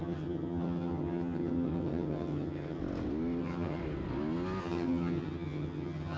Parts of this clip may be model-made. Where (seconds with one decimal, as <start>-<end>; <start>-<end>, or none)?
0.0-2.8; 3.4-3.8; 4.6-6.2